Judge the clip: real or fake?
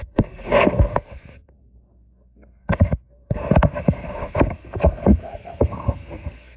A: fake